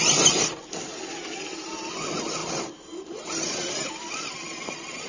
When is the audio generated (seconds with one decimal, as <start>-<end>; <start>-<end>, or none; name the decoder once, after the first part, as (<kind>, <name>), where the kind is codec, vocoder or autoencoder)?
none